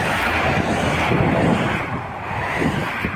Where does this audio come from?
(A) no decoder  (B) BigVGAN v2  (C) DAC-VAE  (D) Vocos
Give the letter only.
A